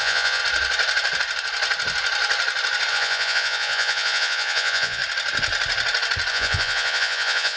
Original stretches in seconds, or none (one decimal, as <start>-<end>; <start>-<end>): 0.4-2.9; 5.0-6.3